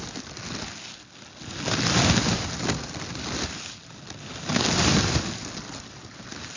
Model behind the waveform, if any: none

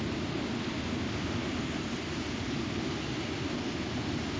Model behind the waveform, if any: none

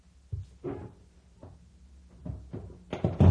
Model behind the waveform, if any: none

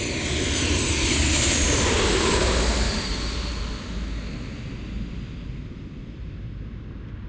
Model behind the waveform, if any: none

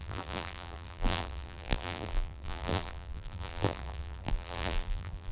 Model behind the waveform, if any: vocoder, BigVGAN v2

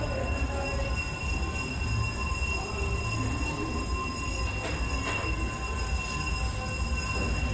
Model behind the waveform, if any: none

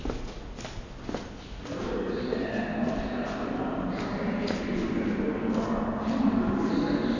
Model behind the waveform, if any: none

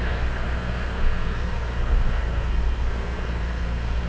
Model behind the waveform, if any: codec, SNAC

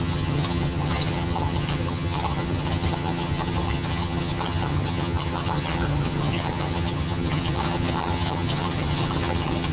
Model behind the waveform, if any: vocoder, HiFi-GAN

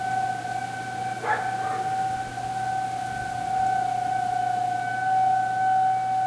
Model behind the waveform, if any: none